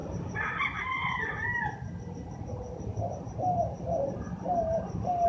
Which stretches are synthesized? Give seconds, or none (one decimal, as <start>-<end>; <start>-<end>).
0.0-1.2; 2.9-5.3